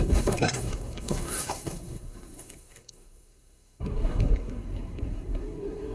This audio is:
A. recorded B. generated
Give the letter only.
B